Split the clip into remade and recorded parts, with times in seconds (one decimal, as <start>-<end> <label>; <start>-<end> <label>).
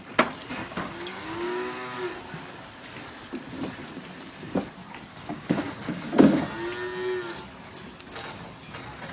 0.0-0.6 recorded; 0.6-2.1 remade; 2.1-5.1 recorded; 5.1-6.4 remade; 6.4-9.1 recorded